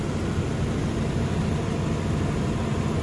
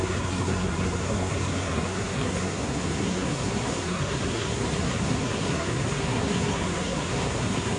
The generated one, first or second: second